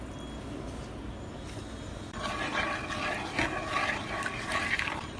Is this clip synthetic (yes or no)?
no